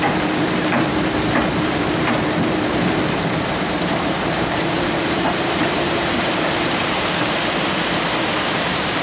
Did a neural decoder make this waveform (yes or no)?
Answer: yes